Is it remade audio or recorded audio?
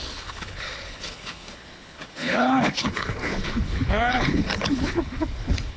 remade